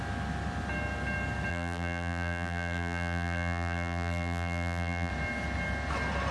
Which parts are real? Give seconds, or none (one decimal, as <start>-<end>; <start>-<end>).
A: 0.0-1.5; 5.1-6.3